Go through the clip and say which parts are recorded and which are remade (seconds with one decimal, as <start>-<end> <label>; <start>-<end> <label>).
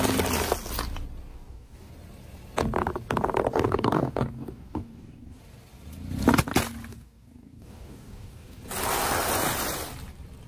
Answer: 0.0-1.3 recorded; 1.3-1.9 remade; 1.9-3.5 recorded; 3.5-5.4 remade; 5.4-6.9 recorded; 6.9-8.6 remade; 8.6-10.5 recorded